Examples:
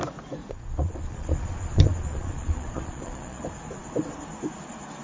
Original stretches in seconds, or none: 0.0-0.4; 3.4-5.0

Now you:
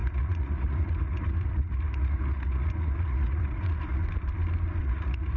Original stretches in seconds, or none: 4.0-4.8